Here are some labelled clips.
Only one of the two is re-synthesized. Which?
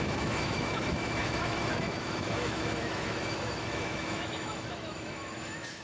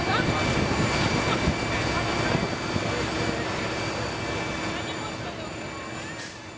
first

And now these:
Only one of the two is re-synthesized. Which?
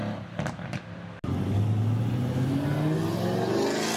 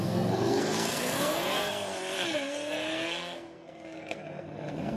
second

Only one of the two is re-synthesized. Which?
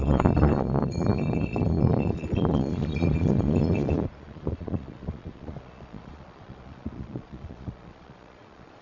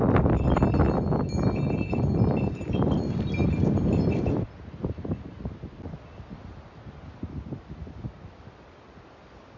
first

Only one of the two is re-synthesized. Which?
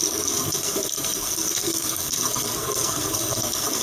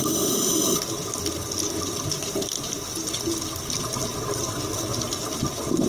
first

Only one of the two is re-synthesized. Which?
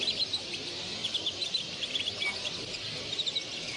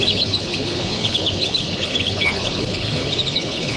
second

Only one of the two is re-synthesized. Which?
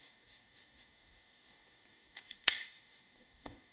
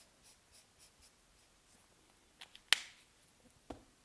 first